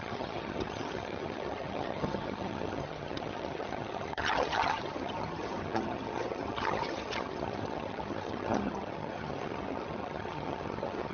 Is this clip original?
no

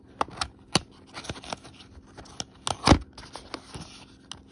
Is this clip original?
yes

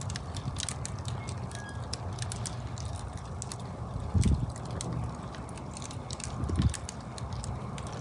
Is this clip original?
yes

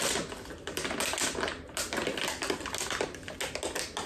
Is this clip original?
yes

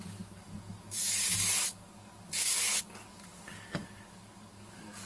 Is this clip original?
no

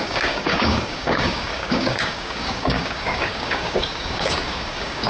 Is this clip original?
no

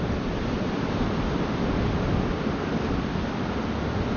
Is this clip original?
yes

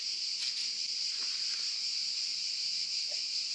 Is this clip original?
yes